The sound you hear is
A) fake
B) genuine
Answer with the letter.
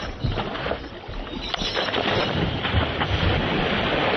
B